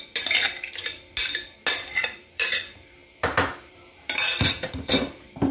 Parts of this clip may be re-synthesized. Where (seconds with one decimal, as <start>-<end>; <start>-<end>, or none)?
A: 1.9-2.5; 3.0-4.9